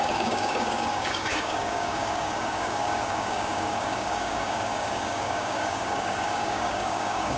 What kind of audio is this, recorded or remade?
remade